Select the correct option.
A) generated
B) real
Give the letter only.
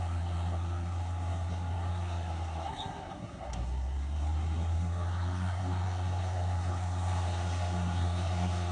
A